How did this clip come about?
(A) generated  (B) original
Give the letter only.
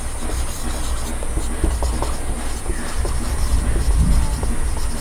B